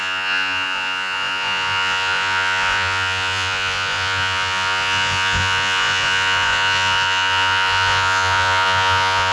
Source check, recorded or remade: remade